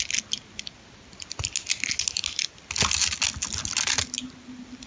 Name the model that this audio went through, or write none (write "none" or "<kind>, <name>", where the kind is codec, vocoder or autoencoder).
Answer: none